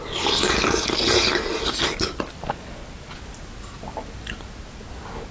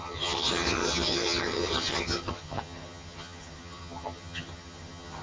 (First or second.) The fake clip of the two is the second